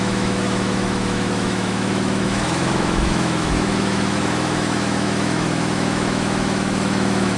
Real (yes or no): no